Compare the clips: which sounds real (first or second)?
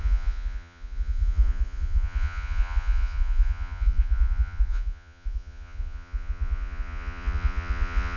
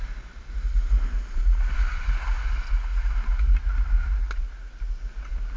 second